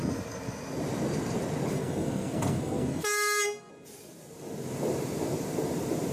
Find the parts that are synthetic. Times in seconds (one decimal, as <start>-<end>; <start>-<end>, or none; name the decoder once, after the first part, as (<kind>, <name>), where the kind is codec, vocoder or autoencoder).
1.7-3.7 (codec, SNAC)

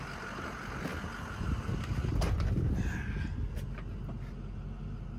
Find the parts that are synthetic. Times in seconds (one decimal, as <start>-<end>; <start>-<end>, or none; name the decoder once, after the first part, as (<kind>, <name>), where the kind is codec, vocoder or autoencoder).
none

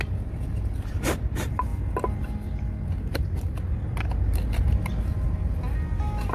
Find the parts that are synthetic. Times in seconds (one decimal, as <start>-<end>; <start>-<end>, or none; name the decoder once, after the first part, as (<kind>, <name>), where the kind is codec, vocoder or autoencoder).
none

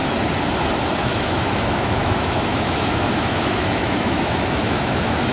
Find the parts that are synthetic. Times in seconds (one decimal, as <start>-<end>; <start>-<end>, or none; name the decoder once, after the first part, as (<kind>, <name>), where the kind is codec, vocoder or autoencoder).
1.0-5.3 (autoencoder, DAC-VAE)